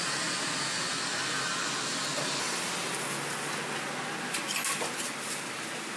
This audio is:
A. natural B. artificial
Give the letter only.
A